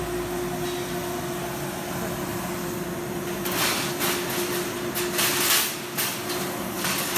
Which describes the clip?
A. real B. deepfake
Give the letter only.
A